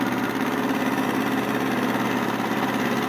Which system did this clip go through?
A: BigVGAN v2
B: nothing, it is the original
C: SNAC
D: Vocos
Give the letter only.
B